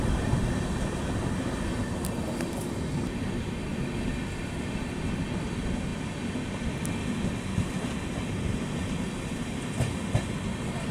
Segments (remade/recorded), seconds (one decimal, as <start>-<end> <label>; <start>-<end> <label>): 0.0-10.9 recorded